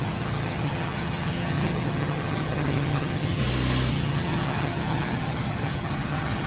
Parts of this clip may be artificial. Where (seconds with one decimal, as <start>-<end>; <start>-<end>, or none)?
0.0-3.4; 3.9-6.5